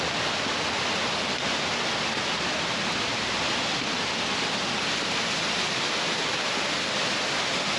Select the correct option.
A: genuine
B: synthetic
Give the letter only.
A